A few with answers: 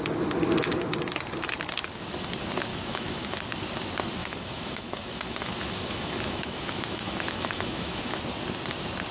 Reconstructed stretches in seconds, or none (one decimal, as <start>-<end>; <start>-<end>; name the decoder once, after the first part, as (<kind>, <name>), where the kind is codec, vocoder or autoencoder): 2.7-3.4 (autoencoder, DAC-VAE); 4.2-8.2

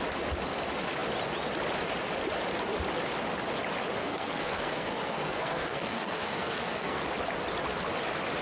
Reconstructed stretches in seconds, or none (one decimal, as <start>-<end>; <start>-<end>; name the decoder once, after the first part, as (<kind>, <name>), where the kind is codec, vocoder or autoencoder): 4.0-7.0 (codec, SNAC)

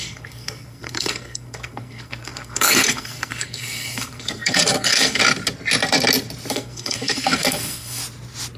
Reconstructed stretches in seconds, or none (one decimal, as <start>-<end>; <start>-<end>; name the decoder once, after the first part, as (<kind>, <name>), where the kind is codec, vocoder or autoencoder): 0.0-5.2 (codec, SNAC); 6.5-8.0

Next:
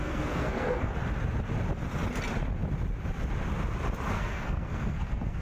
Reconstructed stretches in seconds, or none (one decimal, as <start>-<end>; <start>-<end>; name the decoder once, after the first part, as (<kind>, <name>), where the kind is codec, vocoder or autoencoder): 0.0-0.9 (codec, SNAC); 4.1-5.4

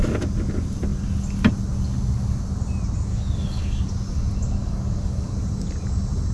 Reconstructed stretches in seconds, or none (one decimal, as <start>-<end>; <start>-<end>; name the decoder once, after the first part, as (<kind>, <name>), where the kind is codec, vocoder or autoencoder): 3.1-3.8 (codec, DAC); 4.6-5.3

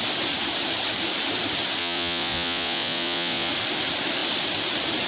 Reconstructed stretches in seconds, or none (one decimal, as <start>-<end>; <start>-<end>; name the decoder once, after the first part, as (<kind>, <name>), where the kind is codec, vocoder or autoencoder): 1.8-3.5 (vocoder, Vocos)

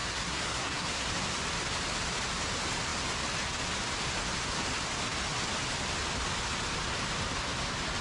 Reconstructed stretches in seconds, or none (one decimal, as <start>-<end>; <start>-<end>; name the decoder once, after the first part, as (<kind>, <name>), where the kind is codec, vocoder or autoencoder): 0.0-1.1 (codec, SNAC)